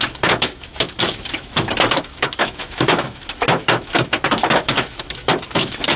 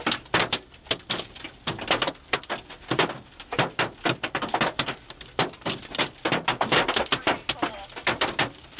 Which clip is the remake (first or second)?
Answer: first